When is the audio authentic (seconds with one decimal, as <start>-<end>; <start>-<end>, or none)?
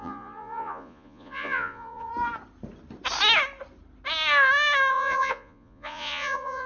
2.1-4.9